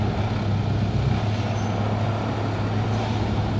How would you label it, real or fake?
real